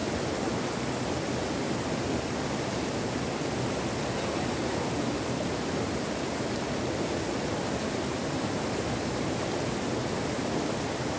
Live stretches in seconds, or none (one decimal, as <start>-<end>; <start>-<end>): 0.0-11.2